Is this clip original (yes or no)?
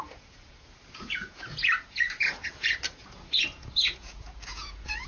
no